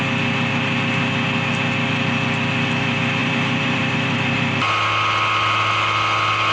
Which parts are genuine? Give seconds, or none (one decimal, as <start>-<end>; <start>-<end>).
0.0-3.2; 4.6-6.5